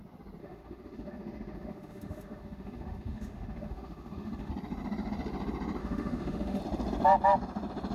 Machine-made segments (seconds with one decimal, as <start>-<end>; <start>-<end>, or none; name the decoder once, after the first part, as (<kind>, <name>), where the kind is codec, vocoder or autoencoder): 0.4-4.5 (autoencoder, DAC-VAE); 5.8-6.6